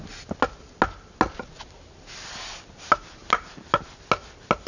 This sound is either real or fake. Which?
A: real